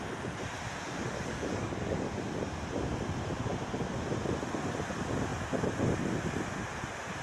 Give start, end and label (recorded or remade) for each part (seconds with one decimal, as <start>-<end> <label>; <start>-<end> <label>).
0.0-1.0 recorded; 1.0-2.1 remade; 2.1-7.2 recorded